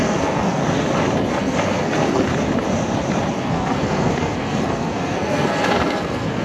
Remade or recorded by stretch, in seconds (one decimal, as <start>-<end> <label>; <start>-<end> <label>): 0.0-0.6 remade; 0.6-1.3 recorded; 1.3-2.3 remade; 2.3-3.3 recorded; 3.3-6.4 remade

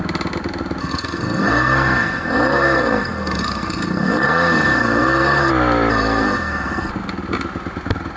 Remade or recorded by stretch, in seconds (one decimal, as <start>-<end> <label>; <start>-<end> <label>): 0.0-0.8 recorded; 0.8-5.5 remade; 5.5-5.9 recorded; 5.9-6.9 remade; 6.9-8.2 recorded